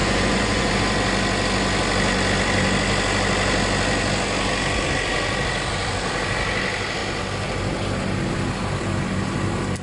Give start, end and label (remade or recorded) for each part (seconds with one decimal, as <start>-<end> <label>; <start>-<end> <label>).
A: 0.0-0.7 remade; 0.7-9.8 recorded